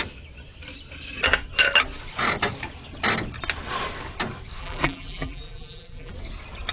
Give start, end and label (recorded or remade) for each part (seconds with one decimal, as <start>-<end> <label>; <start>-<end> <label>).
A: 0.0-4.6 recorded; 4.6-6.1 remade; 6.1-6.7 recorded